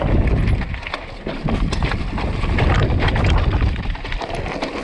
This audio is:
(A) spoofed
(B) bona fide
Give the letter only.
B